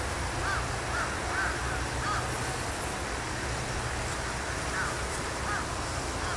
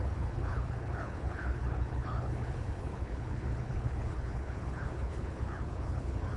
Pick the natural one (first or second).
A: first